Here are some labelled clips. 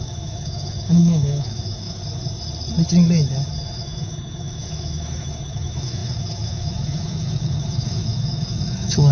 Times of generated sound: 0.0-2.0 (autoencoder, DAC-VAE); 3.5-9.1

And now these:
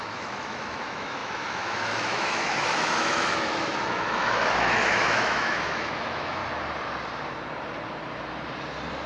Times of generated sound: 0.0-6.4 (autoencoder, DAC-VAE)

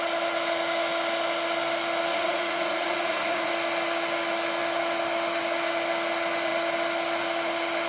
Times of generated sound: 2.1-3.5 (vocoder, Vocos)

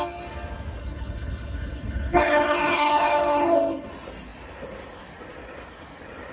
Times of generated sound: 0.8-3.9 (codec, HILCodec)

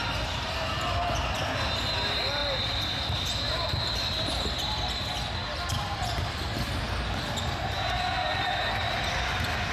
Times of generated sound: 2.4-6.8 (vocoder, BigVGAN v2); 8.3-9.7

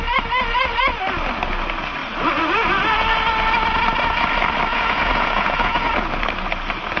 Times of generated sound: 4.7-5.9 (vocoder, Vocos)